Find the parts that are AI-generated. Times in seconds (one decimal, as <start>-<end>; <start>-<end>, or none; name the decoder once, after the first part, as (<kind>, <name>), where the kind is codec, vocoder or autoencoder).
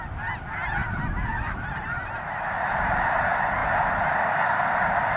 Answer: none